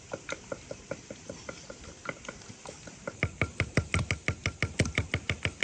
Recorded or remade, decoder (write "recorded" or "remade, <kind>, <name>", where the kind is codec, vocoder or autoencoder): recorded